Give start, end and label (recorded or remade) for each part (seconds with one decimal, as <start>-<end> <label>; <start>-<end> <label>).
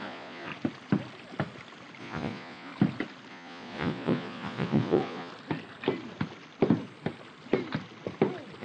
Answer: 0.0-0.5 remade; 0.5-2.0 recorded; 2.0-2.7 remade; 2.7-3.3 recorded; 3.3-5.3 remade; 5.3-8.6 recorded